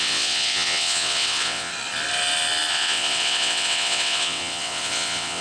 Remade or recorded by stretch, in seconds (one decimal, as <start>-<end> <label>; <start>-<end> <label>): 0.0-1.7 remade; 1.7-2.7 recorded; 2.7-5.4 remade